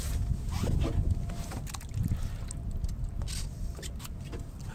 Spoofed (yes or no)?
no